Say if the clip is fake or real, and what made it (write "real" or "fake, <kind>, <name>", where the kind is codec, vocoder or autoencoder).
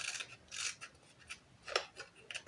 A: real